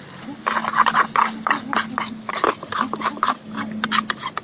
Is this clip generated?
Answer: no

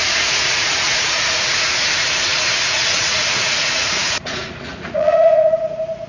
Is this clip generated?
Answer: yes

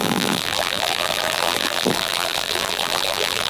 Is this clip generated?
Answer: yes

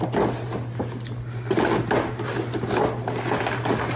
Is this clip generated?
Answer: no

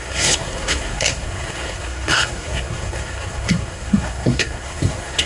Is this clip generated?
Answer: yes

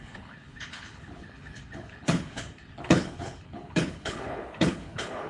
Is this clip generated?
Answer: yes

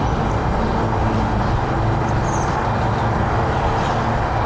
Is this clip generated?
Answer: no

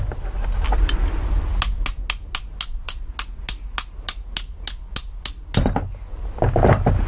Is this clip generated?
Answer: no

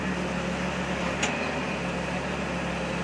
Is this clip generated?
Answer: no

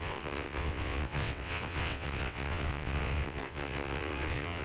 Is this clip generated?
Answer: yes